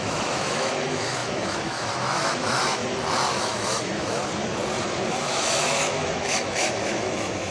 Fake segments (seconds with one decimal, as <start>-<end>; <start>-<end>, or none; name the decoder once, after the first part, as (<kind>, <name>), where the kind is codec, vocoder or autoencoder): 0.0-2.8 (autoencoder, DAC-VAE); 3.4-4.2; 5.1-7.5